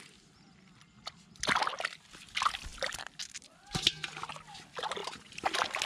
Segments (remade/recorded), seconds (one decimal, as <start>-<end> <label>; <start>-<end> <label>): 0.0-5.9 recorded